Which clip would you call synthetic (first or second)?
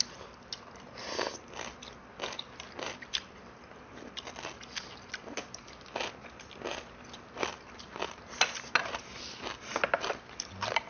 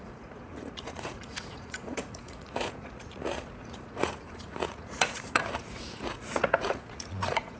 second